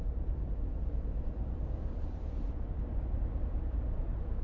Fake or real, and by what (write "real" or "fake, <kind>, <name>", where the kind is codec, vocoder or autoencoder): fake, vocoder, BigVGAN v2